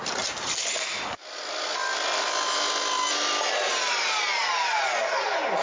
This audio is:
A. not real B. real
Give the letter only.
B